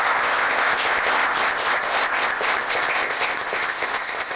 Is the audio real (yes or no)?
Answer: no